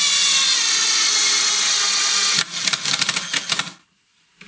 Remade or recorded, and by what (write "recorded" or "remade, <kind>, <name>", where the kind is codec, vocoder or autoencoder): recorded